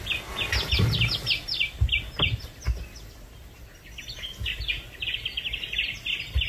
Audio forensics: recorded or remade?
recorded